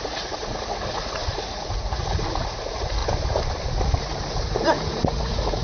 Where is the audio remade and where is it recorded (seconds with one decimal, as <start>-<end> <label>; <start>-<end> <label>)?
0.0-3.0 remade; 3.0-4.0 recorded; 4.0-5.6 remade